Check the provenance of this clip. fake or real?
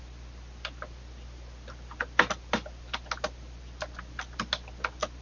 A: real